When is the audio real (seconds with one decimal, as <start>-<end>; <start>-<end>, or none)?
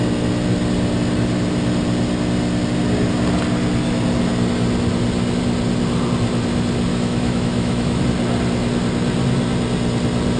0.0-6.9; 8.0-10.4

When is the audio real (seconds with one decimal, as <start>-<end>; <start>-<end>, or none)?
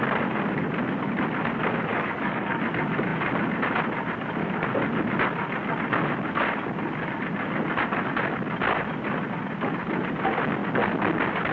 0.0-1.9; 2.6-11.5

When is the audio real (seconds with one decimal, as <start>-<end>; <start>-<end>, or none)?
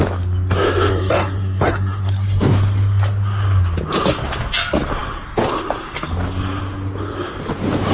0.0-0.9; 2.4-7.9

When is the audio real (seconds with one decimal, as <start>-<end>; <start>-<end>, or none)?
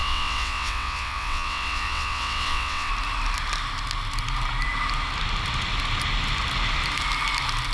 2.9-7.7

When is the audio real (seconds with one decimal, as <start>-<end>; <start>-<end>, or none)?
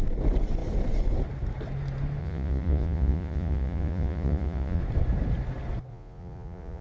0.0-2.2; 4.8-5.9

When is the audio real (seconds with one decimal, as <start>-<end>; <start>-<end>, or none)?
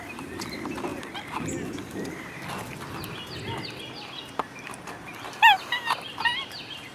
0.0-6.9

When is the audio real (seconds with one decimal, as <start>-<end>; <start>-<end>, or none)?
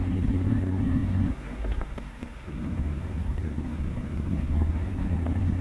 none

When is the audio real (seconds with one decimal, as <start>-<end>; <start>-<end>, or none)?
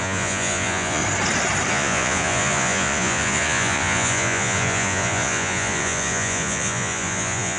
1.0-1.7